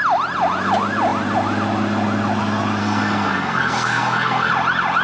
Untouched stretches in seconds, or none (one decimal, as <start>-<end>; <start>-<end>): 0.0-2.8; 4.5-5.0